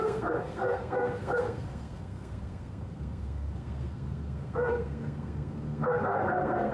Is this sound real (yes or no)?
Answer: no